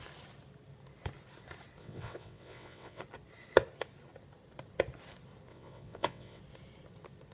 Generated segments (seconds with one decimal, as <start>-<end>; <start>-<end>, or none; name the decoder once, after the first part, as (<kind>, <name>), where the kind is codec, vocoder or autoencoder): 1.8-3.0 (vocoder, WaveNeXt); 5.5-6.4